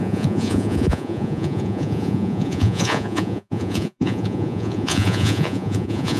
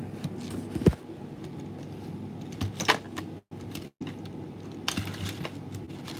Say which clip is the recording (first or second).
second